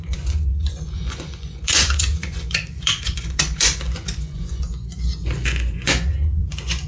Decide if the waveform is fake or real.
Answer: fake